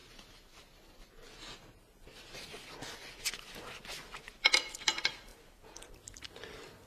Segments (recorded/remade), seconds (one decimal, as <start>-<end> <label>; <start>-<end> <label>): 0.0-6.9 recorded